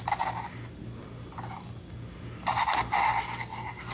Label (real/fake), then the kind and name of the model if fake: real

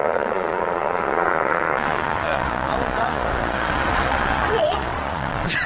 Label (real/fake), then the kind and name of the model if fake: fake, vocoder, Vocos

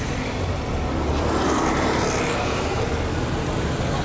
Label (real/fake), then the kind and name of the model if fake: real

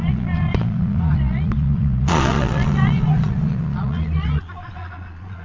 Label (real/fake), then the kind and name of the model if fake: fake, vocoder, Vocos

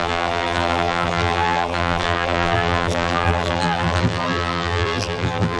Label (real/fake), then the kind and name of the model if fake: fake, vocoder, BigVGAN v2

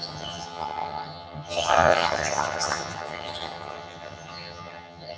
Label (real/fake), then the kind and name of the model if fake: fake, vocoder, HiFi-GAN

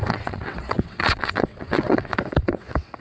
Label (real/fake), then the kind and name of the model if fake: fake, vocoder, WaveNeXt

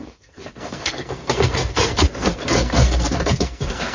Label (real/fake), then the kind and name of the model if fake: fake, codec, SNAC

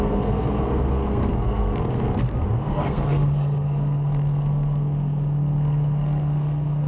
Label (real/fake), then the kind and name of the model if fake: fake, codec, SNAC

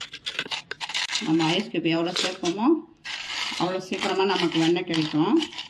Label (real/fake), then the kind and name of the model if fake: fake, vocoder, BigVGAN v2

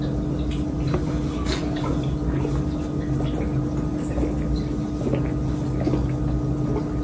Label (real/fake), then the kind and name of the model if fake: real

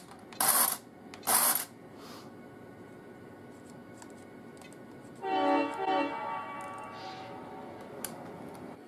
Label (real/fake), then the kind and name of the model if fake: real